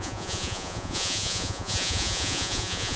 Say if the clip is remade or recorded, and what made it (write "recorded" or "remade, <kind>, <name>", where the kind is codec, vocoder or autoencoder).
remade, vocoder, Vocos